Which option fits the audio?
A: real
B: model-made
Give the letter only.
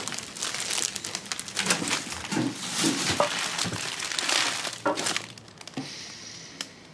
A